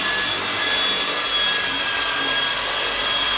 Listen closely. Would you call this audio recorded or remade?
recorded